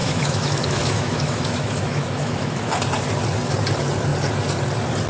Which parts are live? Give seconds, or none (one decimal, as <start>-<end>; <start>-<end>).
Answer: 2.7-5.1